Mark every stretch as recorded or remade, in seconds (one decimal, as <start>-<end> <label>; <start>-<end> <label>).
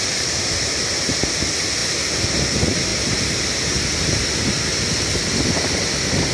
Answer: 0.0-6.3 recorded